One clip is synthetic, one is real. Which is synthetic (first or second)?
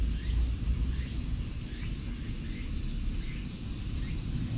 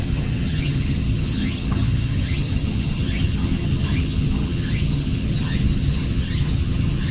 second